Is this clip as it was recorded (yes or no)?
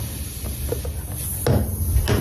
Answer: yes